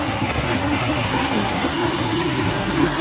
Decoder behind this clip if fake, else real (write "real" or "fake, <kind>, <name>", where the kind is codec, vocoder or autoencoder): fake, codec, SNAC